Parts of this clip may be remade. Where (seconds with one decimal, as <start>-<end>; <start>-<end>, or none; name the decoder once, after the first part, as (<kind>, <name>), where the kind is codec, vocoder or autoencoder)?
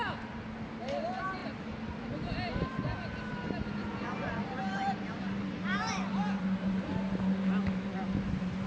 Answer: 1.4-6.4 (vocoder, BigVGAN v2); 7.9-8.7